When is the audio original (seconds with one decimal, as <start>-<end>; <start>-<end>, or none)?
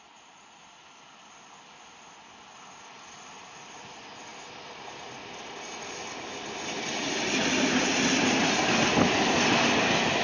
0.0-10.2